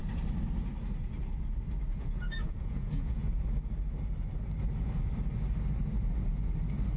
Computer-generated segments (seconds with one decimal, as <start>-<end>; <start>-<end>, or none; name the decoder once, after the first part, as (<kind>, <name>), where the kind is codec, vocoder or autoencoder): 1.9-3.3 (vocoder, Vocos)